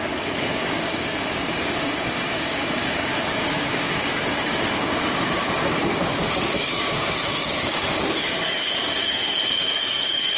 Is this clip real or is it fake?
fake